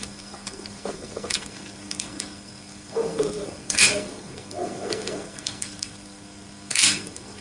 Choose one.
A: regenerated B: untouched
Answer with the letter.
A